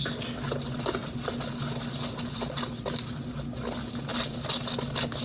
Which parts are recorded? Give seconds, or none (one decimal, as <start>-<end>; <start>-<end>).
0.0-5.2